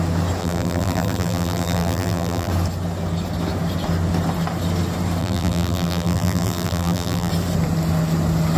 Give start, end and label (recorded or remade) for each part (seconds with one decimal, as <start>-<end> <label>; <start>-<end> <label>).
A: 0.0-0.4 recorded; 0.4-2.5 remade; 2.5-5.2 recorded; 5.2-7.3 remade; 7.3-8.6 recorded